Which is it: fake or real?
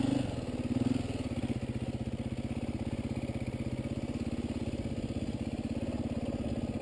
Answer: real